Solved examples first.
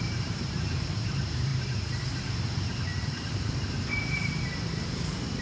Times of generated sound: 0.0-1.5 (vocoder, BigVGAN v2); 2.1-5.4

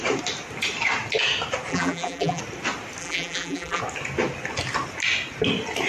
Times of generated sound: 1.7-2.4 (vocoder, BigVGAN v2); 3.0-3.8

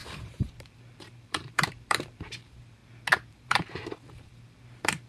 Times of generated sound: 0.0-2.8 (vocoder, BigVGAN v2); 3.3-5.1